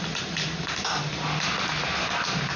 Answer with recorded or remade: recorded